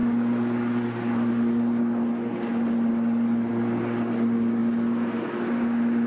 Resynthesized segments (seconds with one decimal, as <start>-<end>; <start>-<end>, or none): none